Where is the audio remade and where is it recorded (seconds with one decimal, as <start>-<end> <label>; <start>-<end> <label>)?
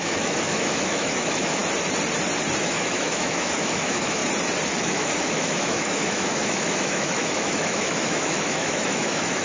0.0-1.6 remade; 1.6-2.6 recorded; 2.6-4.2 remade; 4.2-4.8 recorded; 4.8-9.4 remade